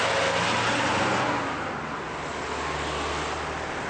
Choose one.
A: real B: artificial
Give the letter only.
A